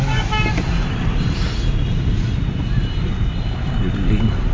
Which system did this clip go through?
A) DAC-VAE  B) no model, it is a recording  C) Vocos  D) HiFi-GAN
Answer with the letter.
B